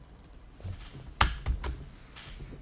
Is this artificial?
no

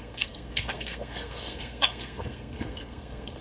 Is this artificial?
yes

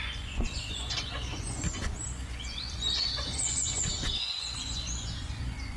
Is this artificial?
yes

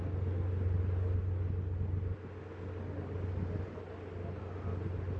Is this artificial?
no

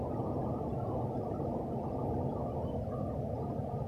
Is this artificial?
no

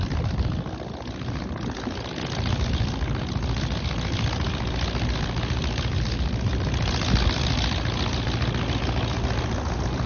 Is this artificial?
no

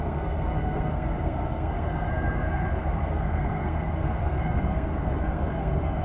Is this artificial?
yes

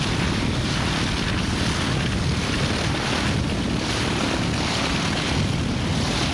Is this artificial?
no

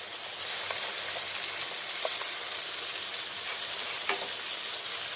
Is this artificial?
no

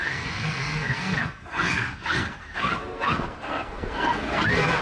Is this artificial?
yes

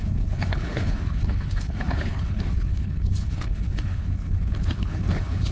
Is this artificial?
yes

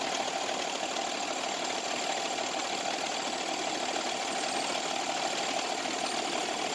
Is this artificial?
no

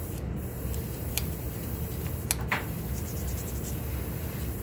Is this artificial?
no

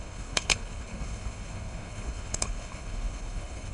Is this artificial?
yes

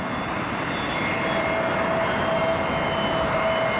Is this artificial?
no